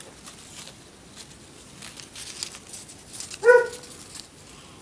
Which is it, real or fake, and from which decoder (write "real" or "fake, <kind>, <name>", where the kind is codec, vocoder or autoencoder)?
real